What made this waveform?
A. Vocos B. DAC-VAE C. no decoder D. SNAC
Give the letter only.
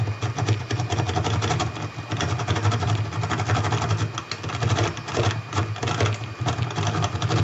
C